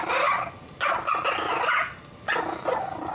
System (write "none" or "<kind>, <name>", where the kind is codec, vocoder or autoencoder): none